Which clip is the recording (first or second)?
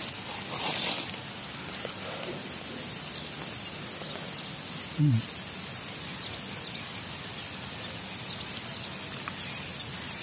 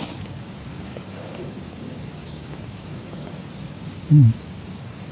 first